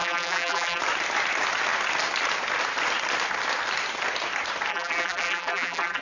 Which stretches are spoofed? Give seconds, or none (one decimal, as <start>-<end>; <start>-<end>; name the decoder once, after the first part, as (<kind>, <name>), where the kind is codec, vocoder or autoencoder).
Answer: 0.0-0.8 (vocoder, BigVGAN v2); 4.7-6.0